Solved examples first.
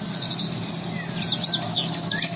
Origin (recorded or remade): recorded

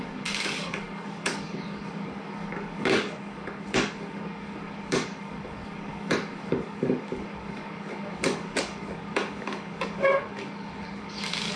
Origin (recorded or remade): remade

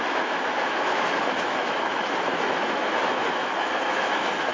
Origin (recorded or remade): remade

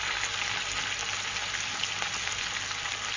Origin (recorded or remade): recorded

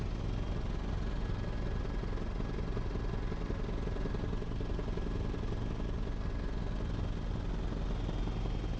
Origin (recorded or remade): recorded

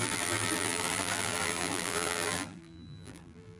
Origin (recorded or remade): remade